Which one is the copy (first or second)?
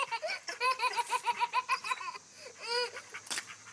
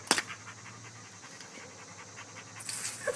first